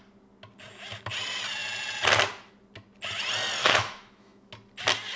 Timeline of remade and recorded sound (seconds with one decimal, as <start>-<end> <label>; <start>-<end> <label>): 0.0-3.6 recorded; 3.6-4.5 remade; 4.5-5.2 recorded